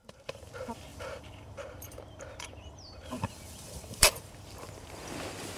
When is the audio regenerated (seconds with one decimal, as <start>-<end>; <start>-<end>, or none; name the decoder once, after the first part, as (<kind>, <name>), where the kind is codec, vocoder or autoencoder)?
0.0-0.5 (vocoder, BigVGAN v2); 0.9-4.3